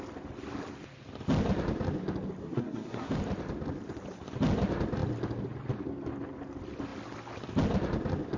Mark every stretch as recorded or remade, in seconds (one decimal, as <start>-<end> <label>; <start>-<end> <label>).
0.0-2.4 recorded; 2.4-3.1 remade; 3.1-8.4 recorded